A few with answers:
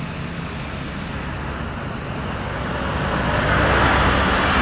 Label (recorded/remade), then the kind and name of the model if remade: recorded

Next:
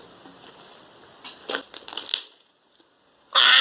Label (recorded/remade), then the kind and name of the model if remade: recorded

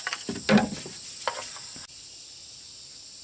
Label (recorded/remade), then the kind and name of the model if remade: recorded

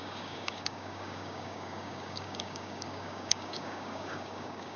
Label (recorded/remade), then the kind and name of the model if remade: remade, codec, DAC